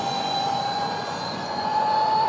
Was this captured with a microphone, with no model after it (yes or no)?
no